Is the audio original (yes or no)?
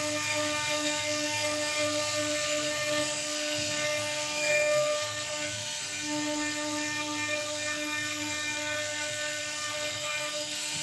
no